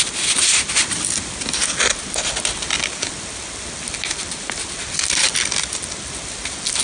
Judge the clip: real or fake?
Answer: real